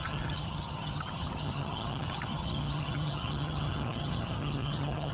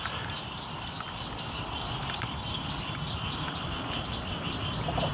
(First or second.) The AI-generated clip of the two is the first